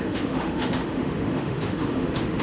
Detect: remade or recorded remade